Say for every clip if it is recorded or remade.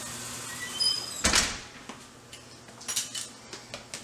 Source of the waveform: recorded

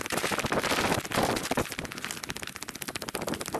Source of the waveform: recorded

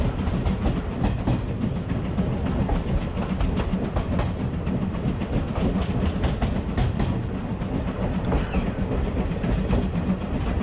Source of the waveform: recorded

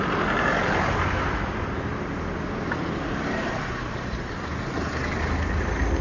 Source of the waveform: recorded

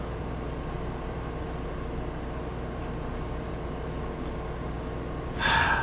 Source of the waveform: recorded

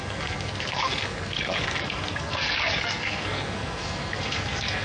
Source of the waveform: remade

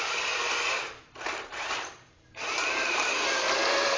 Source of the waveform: remade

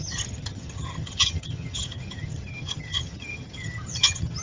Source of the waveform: remade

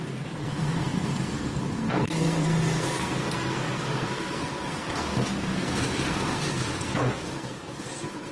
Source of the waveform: remade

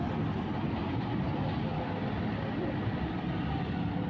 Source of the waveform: recorded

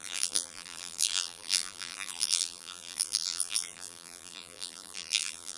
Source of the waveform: remade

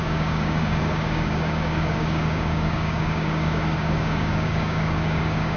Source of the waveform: remade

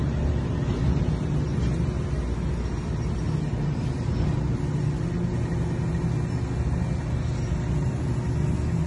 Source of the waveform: recorded